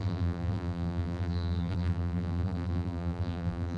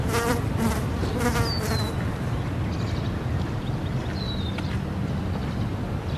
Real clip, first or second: second